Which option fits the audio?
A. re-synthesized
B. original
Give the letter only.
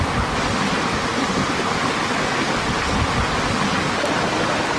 B